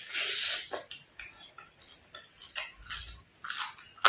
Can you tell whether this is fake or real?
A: real